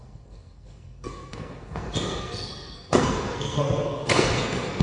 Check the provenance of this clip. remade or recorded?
remade